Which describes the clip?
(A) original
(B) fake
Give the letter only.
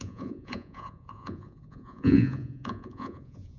B